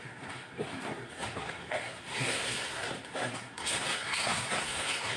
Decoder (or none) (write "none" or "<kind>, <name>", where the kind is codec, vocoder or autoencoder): codec, SNAC